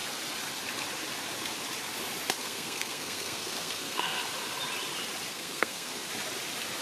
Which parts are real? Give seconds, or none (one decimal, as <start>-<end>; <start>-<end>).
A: 0.0-2.4; 4.2-5.3; 6.1-6.8